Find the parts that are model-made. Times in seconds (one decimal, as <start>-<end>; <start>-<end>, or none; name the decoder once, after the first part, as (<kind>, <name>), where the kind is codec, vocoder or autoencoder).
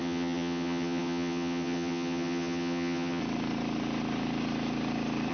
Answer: 0.0-3.2 (vocoder, HiFi-GAN)